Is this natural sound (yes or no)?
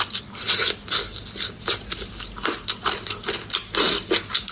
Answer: yes